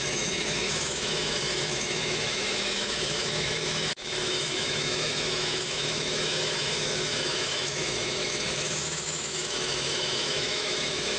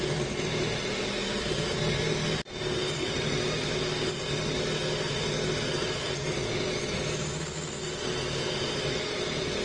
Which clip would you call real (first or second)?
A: second